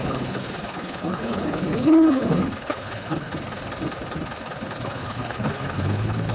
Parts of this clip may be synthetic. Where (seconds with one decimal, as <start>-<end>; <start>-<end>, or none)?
0.0-3.3; 4.9-6.3